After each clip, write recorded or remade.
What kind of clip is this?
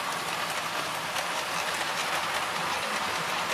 recorded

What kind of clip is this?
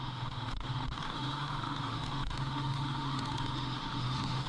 remade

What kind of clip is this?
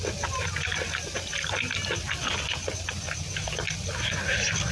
recorded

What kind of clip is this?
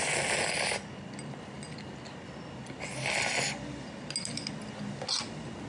recorded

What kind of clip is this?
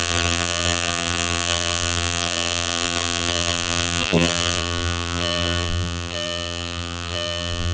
remade